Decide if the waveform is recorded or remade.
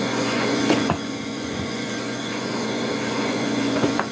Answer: remade